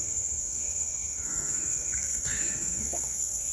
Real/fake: fake